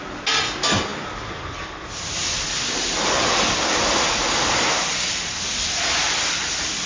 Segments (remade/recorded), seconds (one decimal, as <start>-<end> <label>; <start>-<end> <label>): 0.0-6.9 recorded